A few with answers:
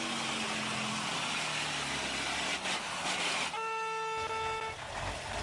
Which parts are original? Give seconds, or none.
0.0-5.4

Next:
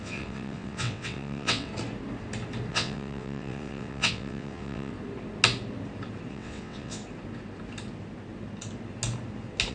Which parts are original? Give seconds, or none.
1.7-2.7; 4.9-6.3; 7.0-9.7

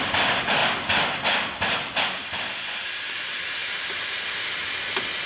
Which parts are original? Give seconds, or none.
0.0-5.3

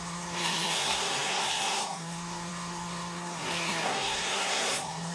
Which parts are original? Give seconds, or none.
none

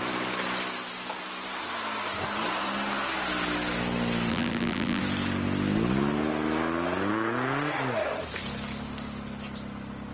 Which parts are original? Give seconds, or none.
0.0-4.3; 5.0-10.1